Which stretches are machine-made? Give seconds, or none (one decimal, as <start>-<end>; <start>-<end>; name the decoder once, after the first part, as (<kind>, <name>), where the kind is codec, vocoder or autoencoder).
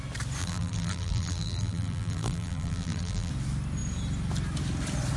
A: 0.4-3.3 (vocoder, BigVGAN v2)